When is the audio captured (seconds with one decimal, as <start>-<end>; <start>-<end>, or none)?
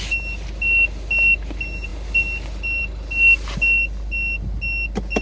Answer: 0.0-5.2